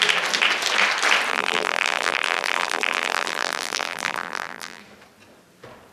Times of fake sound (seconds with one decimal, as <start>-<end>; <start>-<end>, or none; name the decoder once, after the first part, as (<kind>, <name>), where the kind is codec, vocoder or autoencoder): 1.3-4.8 (vocoder, BigVGAN v2)